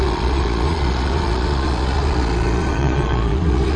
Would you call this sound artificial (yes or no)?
yes